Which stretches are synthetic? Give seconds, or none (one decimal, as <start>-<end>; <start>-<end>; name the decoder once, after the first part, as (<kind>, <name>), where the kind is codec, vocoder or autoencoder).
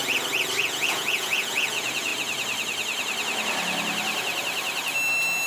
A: 0.6-2.1 (vocoder, Vocos)